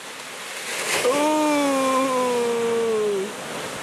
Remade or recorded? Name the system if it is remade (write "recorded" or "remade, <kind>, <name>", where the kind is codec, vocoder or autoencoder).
recorded